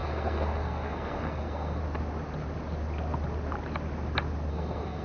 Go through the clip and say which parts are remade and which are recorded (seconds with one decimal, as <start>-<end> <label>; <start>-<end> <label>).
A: 0.0-1.8 remade; 1.8-4.5 recorded; 4.5-5.0 remade